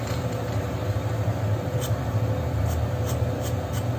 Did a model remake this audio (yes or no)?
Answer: yes